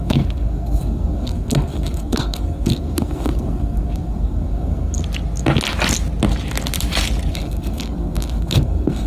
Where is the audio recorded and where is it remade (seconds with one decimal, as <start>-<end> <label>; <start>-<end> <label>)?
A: 0.0-5.0 remade; 5.0-7.3 recorded; 7.3-9.1 remade

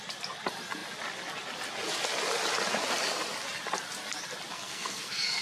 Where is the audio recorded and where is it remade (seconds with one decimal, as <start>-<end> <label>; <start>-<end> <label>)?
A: 0.0-4.5 recorded; 4.5-5.4 remade

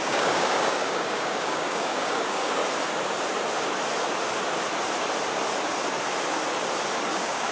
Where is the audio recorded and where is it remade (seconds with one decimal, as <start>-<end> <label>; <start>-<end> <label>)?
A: 0.0-2.6 remade; 2.6-7.1 recorded; 7.1-7.5 remade

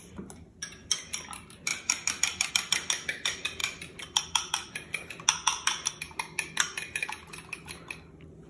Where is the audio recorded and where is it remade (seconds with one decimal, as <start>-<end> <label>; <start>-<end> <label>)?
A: 0.0-8.5 recorded

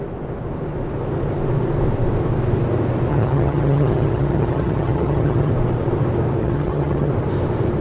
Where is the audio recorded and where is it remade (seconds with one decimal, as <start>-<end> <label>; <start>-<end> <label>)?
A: 0.0-3.1 recorded; 3.1-5.5 remade; 5.5-6.4 recorded; 6.4-7.1 remade; 7.1-7.8 recorded

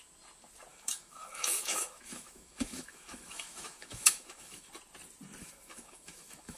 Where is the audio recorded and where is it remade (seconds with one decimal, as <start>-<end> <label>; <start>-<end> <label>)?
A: 0.0-0.7 recorded; 0.7-4.7 remade; 4.7-5.4 recorded; 5.4-6.6 remade